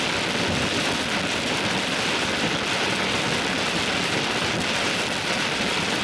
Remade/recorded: recorded